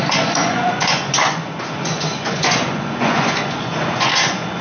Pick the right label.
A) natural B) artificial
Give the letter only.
B